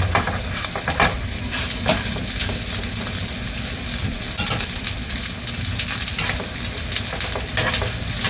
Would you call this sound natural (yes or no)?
yes